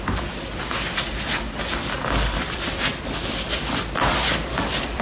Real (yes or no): yes